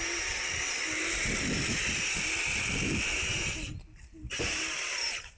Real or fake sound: real